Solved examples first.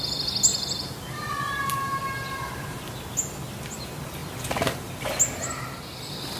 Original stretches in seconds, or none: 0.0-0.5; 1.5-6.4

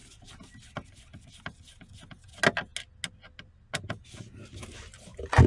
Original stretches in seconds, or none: 0.0-5.5

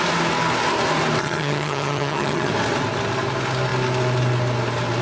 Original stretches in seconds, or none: 0.0-1.2; 2.5-5.0

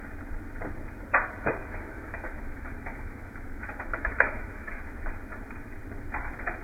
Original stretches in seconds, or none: 0.0-1.6; 4.8-6.6